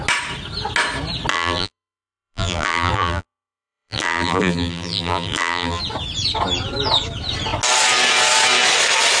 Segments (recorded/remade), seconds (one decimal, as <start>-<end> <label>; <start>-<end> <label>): 0.0-1.3 recorded; 1.3-5.8 remade; 5.8-9.2 recorded